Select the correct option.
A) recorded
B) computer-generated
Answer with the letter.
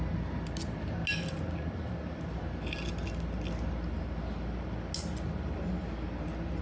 A